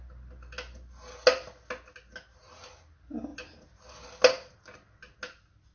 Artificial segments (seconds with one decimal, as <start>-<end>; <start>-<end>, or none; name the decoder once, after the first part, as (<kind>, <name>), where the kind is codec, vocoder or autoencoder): none